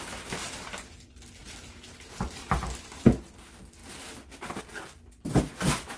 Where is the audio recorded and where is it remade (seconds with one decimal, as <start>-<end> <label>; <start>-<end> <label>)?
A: 0.0-6.0 recorded